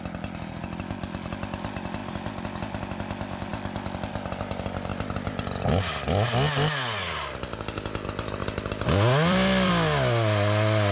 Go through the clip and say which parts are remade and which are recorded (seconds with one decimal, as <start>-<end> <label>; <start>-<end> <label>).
0.0-2.0 recorded; 2.0-2.8 remade; 2.8-8.4 recorded; 8.4-9.7 remade; 9.7-10.9 recorded